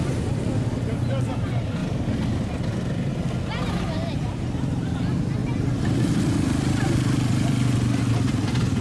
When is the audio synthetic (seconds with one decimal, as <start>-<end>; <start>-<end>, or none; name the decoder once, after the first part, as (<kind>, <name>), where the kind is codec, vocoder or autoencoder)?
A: 0.0-5.4 (vocoder, BigVGAN v2); 6.0-8.8